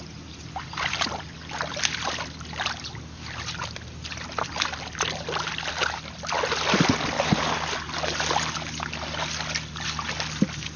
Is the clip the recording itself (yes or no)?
yes